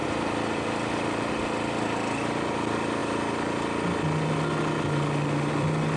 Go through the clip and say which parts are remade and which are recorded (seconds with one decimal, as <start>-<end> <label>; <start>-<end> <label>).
0.0-1.3 remade; 1.3-6.0 recorded